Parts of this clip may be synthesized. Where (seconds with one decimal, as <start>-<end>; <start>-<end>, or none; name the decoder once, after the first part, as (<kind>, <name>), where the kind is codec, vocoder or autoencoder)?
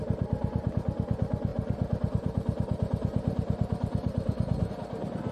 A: 0.0-0.7 (vocoder, BigVGAN v2); 1.5-4.7